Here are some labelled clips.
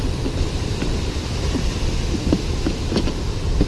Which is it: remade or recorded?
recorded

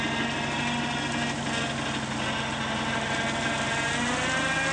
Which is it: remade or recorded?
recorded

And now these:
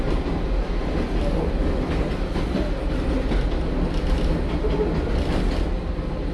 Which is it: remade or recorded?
recorded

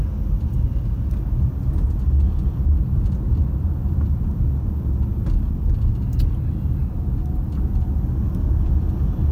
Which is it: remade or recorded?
recorded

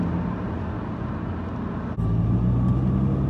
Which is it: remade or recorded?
recorded